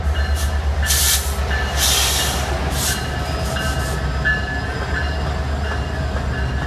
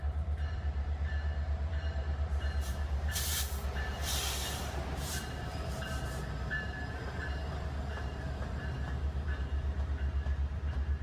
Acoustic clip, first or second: first